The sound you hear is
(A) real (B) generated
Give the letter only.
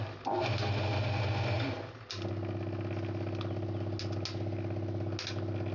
A